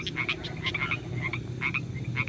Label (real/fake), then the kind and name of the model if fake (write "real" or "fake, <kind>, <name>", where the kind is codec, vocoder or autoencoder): real